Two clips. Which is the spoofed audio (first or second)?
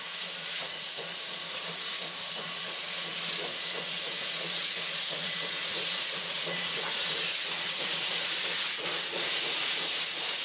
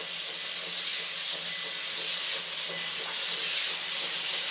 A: first